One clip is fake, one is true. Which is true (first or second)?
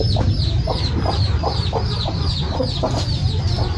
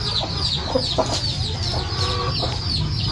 second